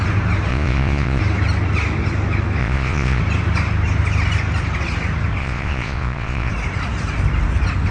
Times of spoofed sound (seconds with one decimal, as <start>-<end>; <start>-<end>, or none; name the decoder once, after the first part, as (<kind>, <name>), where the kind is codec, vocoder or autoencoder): 0.5-1.2 (vocoder, Vocos); 2.6-3.2; 5.4-6.5